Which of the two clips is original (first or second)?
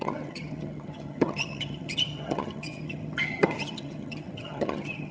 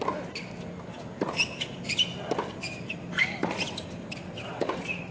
second